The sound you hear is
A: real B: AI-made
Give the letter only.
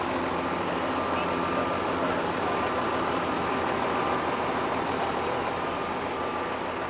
A